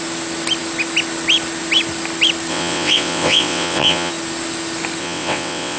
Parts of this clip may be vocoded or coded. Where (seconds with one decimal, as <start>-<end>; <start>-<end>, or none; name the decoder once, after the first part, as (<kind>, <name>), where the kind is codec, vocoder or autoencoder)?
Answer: 2.5-4.1 (vocoder, WaveNeXt); 5.0-5.8